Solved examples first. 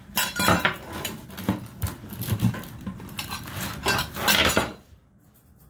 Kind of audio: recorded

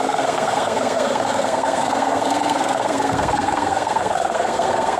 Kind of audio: remade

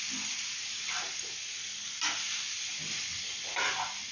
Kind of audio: recorded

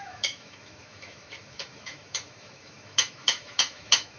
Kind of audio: remade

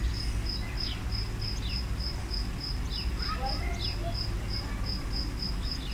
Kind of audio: recorded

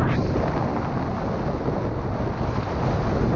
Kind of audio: recorded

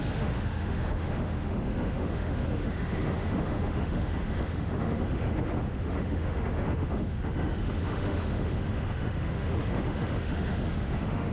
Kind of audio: remade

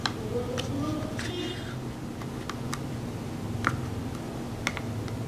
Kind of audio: recorded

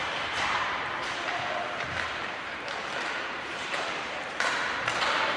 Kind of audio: remade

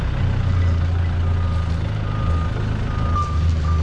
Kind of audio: recorded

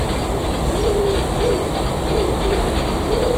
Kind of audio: recorded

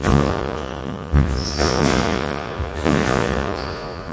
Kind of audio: remade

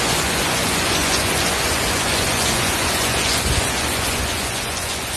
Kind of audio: remade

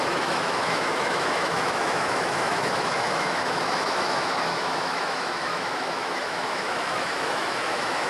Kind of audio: remade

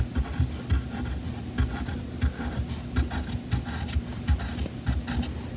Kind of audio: recorded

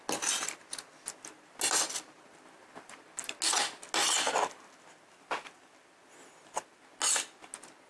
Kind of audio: recorded